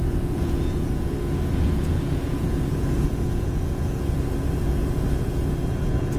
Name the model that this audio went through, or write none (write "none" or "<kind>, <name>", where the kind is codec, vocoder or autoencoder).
vocoder, Vocos